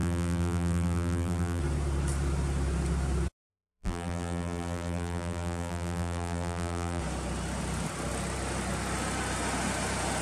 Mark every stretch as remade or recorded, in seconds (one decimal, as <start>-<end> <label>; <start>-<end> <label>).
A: 0.0-1.6 remade; 1.6-3.5 recorded; 3.5-7.0 remade; 7.0-10.2 recorded